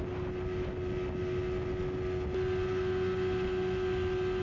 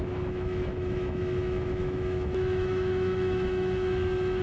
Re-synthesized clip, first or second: second